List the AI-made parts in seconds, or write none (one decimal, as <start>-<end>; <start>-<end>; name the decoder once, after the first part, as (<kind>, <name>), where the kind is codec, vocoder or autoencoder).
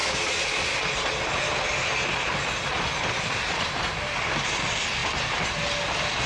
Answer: none